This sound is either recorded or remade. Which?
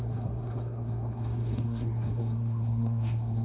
remade